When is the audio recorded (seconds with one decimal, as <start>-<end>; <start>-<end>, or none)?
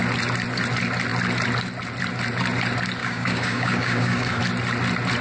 0.0-3.0; 4.4-5.2